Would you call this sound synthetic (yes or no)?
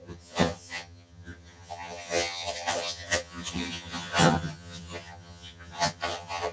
yes